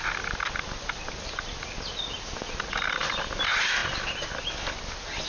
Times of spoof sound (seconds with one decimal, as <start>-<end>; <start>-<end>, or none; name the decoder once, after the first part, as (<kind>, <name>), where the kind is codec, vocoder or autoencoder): none